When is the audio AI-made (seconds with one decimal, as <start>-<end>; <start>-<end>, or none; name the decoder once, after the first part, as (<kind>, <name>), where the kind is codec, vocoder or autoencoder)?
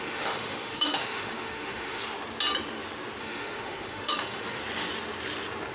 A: 0.0-2.0 (autoencoder, DAC-VAE); 3.2-4.6